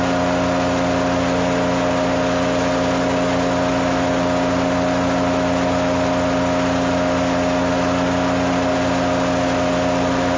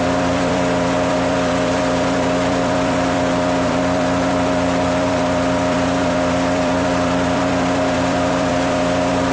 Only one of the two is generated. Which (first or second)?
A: second